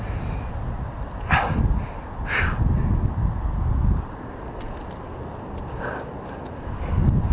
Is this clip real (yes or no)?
yes